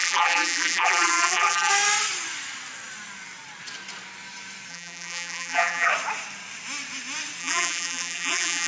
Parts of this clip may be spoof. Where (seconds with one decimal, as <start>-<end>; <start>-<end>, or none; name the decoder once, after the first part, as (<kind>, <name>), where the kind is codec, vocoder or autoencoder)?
0.0-1.7 (vocoder, BigVGAN v2); 4.7-5.9; 7.4-8.7